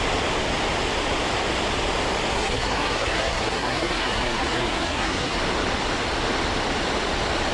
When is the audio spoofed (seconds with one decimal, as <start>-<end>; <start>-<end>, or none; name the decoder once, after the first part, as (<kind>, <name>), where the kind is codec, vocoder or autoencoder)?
2.3-5.4 (codec, SNAC)